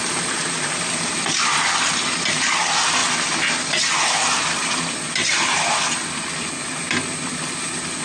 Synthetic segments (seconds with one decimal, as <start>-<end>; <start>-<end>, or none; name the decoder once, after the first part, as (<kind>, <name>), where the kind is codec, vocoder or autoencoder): 0.0-2.3 (vocoder, BigVGAN v2)